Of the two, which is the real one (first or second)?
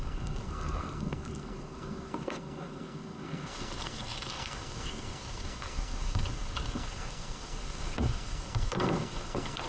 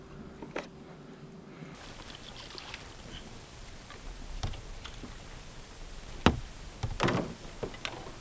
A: second